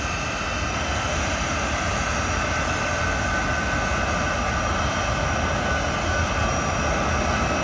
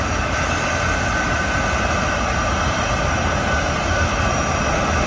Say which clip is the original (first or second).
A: first